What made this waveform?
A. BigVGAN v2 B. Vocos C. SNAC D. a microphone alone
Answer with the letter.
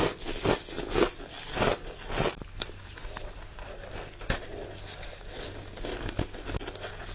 D